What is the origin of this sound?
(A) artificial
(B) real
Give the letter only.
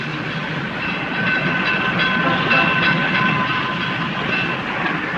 B